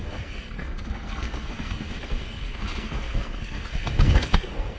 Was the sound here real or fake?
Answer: fake